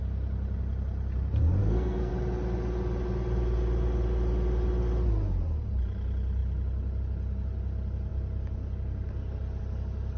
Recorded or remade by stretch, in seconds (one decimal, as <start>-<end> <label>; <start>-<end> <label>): 0.0-1.6 recorded; 1.6-2.1 remade; 2.1-10.2 recorded